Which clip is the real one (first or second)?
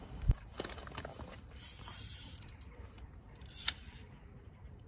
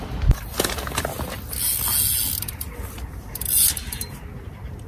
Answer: second